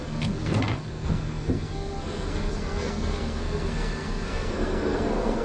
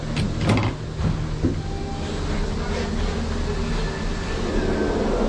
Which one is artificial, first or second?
first